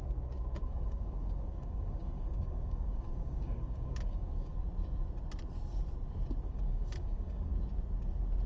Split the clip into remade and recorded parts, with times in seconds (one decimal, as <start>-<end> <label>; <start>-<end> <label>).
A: 0.0-4.5 remade; 4.5-6.4 recorded; 6.4-7.5 remade; 7.5-8.5 recorded